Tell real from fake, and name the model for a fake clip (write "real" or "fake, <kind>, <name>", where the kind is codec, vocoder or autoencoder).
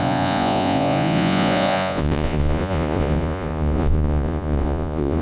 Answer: fake, vocoder, Vocos